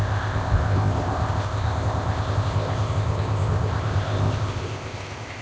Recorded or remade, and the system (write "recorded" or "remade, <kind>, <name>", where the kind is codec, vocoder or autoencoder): remade, codec, ZipCodec